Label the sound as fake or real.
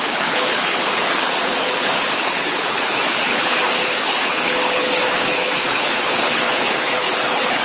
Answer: fake